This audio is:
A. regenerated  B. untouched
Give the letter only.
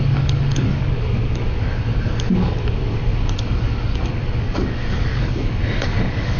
A